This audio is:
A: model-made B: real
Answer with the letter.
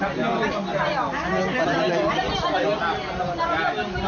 B